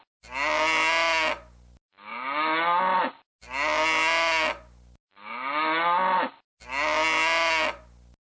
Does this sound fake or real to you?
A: real